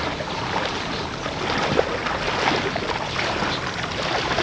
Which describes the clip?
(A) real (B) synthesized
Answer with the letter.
A